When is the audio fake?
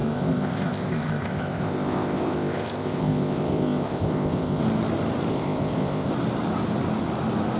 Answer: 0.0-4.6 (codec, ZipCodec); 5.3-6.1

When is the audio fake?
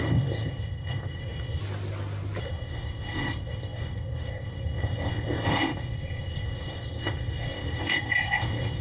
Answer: 0.0-1.6 (codec, ZipCodec); 2.4-8.8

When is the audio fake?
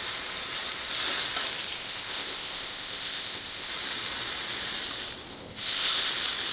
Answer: 1.8-3.7 (codec, ZipCodec); 5.3-6.1